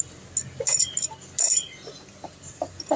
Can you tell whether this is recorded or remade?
recorded